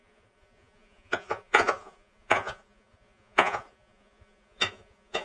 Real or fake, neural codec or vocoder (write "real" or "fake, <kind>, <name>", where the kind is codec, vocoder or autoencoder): fake, vocoder, Vocos